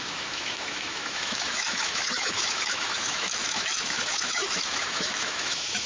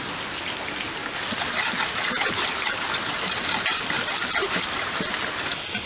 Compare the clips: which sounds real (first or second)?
second